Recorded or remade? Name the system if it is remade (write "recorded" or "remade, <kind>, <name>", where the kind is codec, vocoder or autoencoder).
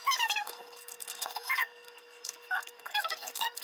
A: remade, codec, SNAC